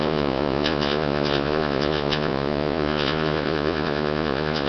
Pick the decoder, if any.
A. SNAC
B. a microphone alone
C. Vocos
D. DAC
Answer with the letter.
C